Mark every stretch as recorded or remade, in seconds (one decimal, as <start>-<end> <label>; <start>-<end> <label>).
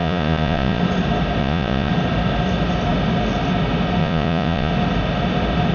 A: 0.0-0.8 remade; 0.8-1.4 recorded; 1.4-1.9 remade; 1.9-4.0 recorded; 4.0-4.7 remade; 4.7-5.7 recorded